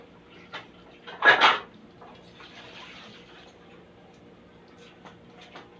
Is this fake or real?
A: real